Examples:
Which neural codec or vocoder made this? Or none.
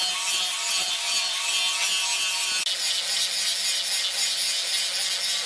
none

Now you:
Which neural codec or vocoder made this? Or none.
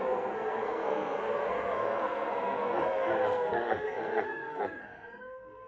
codec, SNAC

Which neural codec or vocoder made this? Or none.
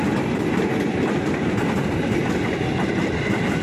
none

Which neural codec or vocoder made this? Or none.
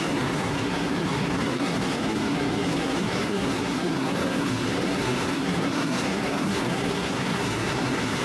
codec, SNAC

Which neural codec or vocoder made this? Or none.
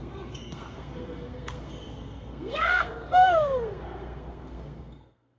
codec, SNAC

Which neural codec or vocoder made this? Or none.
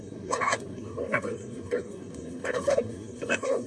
codec, SNAC